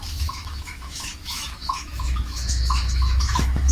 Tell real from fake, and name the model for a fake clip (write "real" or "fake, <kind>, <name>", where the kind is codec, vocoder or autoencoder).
fake, autoencoder, DAC-VAE